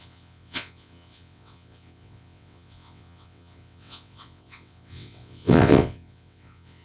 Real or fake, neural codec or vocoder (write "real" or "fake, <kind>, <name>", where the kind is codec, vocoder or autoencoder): fake, vocoder, WaveNeXt